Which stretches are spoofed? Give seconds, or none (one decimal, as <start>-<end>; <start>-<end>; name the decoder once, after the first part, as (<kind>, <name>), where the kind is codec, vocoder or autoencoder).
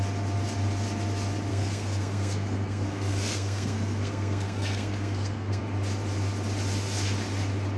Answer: 1.5-5.6 (codec, SNAC)